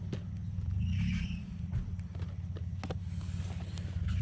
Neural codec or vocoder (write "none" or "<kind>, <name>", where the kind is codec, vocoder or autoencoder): none